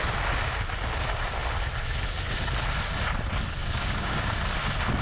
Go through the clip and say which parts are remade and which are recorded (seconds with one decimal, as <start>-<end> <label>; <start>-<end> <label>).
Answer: 0.0-3.6 recorded; 3.6-4.4 remade; 4.4-5.0 recorded